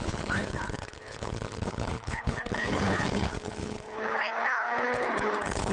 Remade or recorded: remade